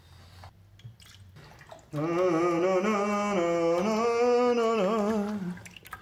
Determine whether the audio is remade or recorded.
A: recorded